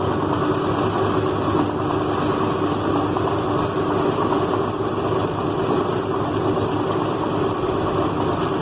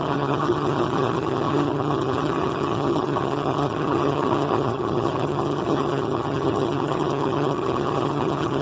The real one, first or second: first